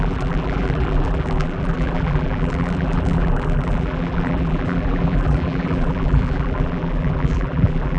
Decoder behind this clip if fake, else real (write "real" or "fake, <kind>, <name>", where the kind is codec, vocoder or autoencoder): fake, vocoder, BigVGAN v2